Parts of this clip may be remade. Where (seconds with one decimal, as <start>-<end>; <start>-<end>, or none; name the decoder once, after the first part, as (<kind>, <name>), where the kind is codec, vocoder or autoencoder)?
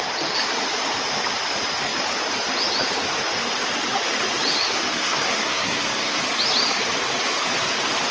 4.9-6.2 (codec, SNAC)